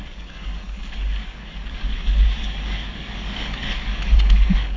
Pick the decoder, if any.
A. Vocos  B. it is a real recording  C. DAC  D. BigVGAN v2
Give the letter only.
C